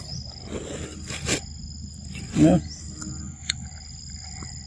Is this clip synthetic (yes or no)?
no